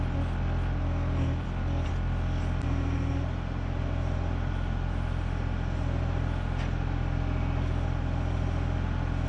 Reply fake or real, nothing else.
real